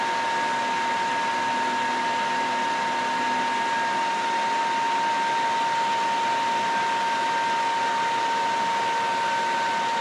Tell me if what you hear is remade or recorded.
recorded